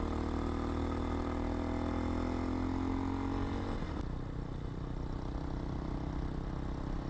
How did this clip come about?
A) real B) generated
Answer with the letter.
A